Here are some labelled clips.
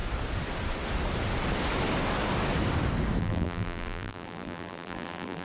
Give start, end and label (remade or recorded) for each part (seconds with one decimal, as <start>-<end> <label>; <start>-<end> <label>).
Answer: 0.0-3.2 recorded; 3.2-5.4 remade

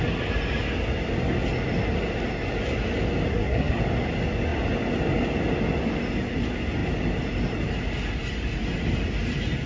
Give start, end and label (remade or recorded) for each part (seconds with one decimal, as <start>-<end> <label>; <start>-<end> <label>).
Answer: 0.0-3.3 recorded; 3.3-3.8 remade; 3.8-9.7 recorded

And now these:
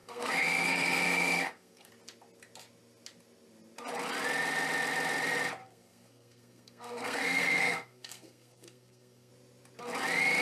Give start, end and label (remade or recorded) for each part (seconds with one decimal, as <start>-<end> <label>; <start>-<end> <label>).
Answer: 0.0-1.9 remade; 1.9-5.6 recorded; 5.6-9.3 remade; 9.3-10.4 recorded

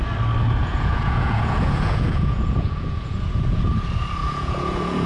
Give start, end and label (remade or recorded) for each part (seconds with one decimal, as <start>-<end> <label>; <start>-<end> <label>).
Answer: 0.0-0.6 recorded; 0.6-3.7 remade; 3.7-4.2 recorded; 4.2-5.1 remade

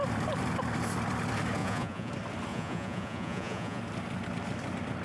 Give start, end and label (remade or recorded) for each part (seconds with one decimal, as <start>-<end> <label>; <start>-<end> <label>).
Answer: 0.0-1.6 recorded; 1.6-2.1 remade; 2.1-2.5 recorded; 2.5-3.8 remade; 3.8-5.0 recorded